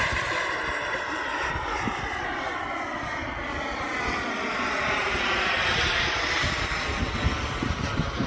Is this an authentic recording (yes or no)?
yes